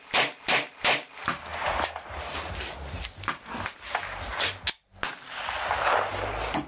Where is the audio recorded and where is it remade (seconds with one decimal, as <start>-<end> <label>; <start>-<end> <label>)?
0.0-1.5 recorded; 1.5-2.5 remade; 2.5-6.7 recorded